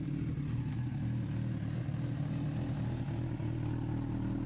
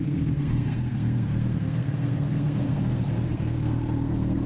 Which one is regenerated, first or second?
second